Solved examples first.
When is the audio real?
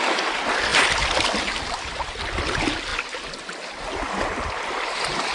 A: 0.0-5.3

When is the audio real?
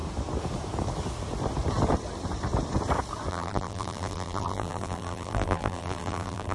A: 0.0-3.3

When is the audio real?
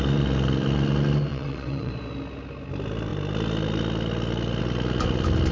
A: 0.0-1.3; 1.9-5.5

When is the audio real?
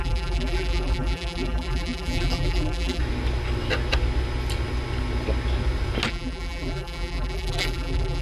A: 3.0-6.1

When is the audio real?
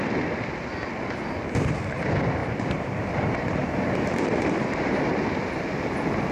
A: 0.0-2.4; 3.1-3.6; 5.1-6.3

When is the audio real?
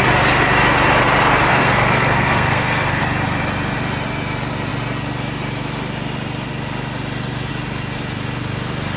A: 0.0-1.5; 3.0-9.0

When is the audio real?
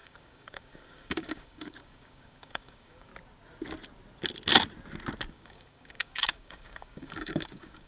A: 3.1-5.3